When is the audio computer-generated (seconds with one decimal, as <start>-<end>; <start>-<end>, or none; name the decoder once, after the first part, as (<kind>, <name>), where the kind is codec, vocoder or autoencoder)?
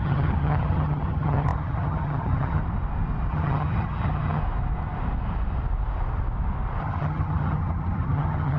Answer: 0.0-2.6 (vocoder, HiFi-GAN); 3.3-4.4; 6.8-8.6